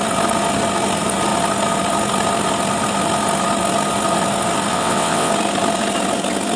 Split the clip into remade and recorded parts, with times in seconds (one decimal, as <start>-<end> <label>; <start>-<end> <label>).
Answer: 0.0-4.7 recorded; 4.7-5.3 remade; 5.3-6.6 recorded